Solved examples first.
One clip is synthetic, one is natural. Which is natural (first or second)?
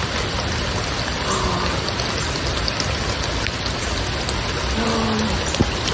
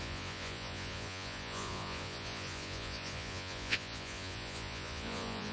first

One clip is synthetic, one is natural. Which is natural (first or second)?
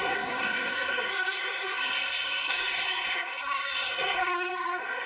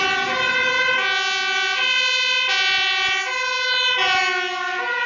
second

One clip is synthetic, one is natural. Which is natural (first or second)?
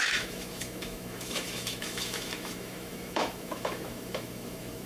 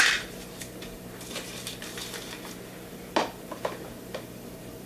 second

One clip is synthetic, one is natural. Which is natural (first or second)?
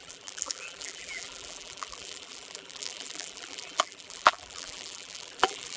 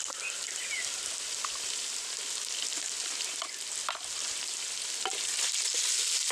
second